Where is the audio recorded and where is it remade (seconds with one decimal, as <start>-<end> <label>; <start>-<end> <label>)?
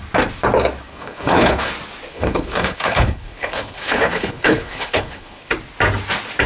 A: 0.0-0.9 recorded; 0.9-1.7 remade; 1.7-2.1 recorded; 2.1-5.5 remade; 5.5-6.5 recorded